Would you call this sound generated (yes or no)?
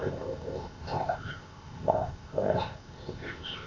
yes